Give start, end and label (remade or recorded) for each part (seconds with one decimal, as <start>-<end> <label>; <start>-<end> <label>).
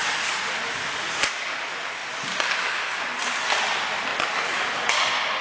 0.0-5.4 recorded